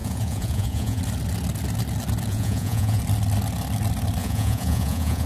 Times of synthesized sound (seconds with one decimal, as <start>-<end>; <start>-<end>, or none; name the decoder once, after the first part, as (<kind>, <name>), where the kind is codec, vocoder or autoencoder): 0.0-1.0 (vocoder, Vocos); 2.3-3.0; 4.2-5.3